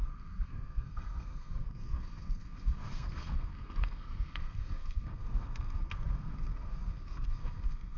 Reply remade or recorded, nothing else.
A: remade